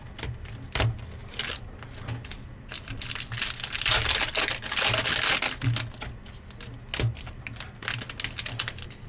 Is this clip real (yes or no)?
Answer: yes